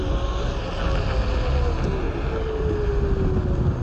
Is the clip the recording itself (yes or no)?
yes